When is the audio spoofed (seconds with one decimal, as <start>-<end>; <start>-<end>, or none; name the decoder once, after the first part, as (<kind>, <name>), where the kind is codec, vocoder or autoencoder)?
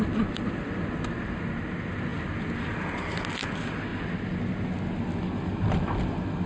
none